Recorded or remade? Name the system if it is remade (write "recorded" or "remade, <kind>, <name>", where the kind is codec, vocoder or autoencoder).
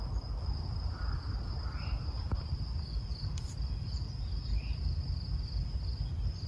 recorded